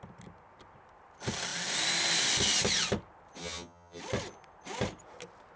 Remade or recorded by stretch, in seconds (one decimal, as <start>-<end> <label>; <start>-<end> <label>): 0.0-3.4 recorded; 3.4-4.0 remade; 4.0-5.6 recorded